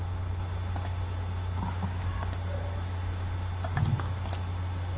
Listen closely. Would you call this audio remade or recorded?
recorded